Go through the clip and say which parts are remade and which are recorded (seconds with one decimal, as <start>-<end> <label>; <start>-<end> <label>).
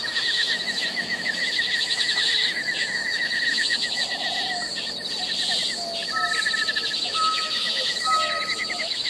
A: 0.0-4.0 remade; 4.0-7.0 recorded; 7.0-9.1 remade